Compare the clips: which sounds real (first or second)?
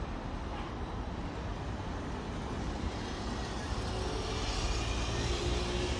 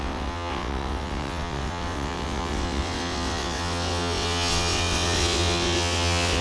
first